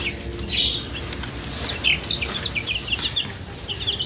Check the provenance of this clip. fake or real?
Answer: real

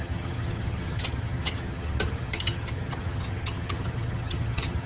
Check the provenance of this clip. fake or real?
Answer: fake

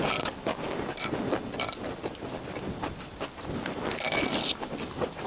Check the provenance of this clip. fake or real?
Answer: real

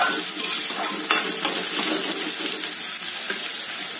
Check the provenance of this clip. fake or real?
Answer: real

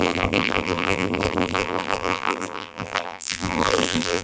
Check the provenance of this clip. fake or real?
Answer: fake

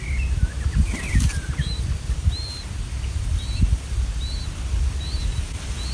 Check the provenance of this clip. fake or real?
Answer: real